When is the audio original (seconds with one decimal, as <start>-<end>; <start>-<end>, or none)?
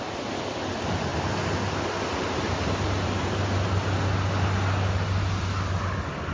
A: 0.0-6.3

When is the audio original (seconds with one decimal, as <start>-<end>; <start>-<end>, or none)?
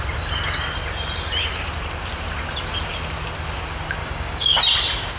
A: 0.0-4.0; 4.6-5.2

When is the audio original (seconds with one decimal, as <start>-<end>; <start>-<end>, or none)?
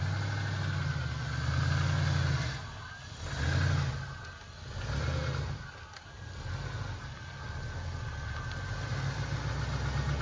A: 0.0-10.2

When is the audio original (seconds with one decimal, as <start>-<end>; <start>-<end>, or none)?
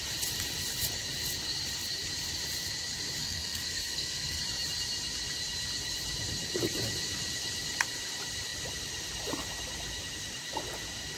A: 0.0-3.2; 4.4-11.2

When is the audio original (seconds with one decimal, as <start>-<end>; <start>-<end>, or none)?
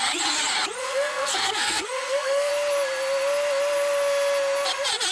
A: 0.0-0.8; 2.5-5.1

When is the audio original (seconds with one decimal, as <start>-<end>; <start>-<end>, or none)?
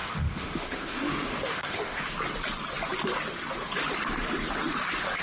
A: 2.1-5.2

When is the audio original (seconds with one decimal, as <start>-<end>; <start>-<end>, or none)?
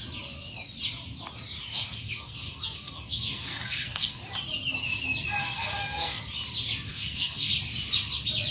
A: 0.0-1.7; 4.2-5.4; 6.2-6.9; 7.5-8.5